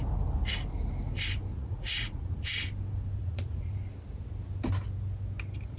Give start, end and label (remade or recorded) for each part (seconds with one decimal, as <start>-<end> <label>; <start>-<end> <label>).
0.0-1.5 recorded; 1.5-2.4 remade; 2.4-3.2 recorded; 3.2-3.7 remade; 3.7-5.8 recorded